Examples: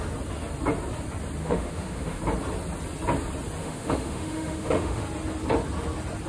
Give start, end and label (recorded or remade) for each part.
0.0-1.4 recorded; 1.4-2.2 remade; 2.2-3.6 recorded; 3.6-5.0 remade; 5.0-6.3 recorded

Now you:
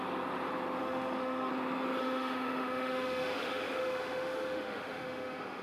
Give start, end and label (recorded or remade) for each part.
0.0-0.8 recorded; 0.8-1.5 remade; 1.5-2.0 recorded; 2.0-5.6 remade

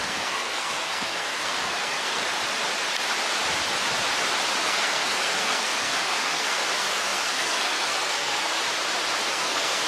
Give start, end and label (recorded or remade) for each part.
0.0-2.2 remade; 2.2-4.6 recorded; 4.6-8.6 remade; 8.6-9.3 recorded; 9.3-9.9 remade

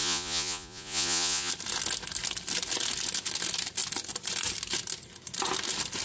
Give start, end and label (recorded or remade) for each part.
0.0-1.5 remade; 1.5-6.0 recorded

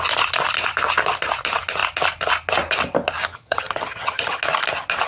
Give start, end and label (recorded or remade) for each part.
0.0-3.3 recorded; 3.3-4.4 remade; 4.4-5.1 recorded

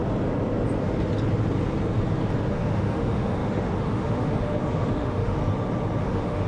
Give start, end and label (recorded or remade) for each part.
0.0-2.5 recorded; 2.5-5.4 remade; 5.4-6.0 recorded; 6.0-6.5 remade

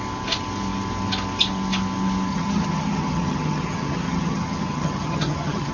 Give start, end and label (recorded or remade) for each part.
0.0-2.3 recorded; 2.3-5.7 remade